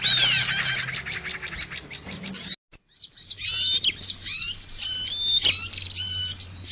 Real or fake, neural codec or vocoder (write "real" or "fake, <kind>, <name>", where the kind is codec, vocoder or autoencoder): real